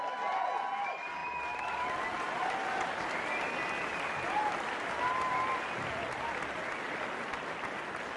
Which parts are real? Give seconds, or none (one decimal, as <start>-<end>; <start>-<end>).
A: 0.0-8.2